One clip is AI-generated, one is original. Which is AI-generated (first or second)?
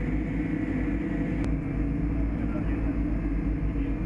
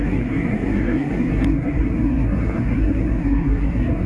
second